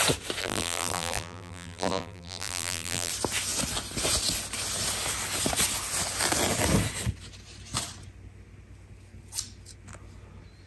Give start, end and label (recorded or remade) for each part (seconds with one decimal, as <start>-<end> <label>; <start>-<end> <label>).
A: 0.0-0.4 recorded; 0.4-3.1 remade; 3.1-10.7 recorded